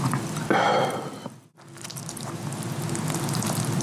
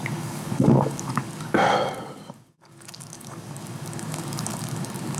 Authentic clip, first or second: first